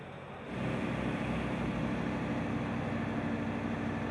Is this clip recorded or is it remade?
recorded